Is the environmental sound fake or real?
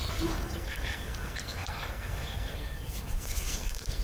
fake